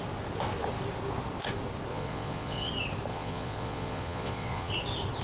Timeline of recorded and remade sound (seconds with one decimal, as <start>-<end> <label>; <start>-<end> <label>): 0.0-1.9 recorded; 1.9-2.7 remade; 2.7-3.1 recorded; 3.1-4.7 remade; 4.7-5.2 recorded